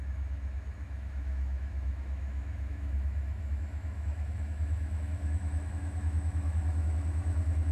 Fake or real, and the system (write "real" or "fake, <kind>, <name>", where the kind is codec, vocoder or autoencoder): fake, autoencoder, DAC-VAE